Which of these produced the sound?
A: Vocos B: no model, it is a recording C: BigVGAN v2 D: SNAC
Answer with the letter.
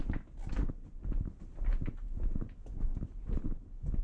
B